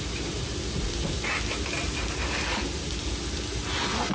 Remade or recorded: recorded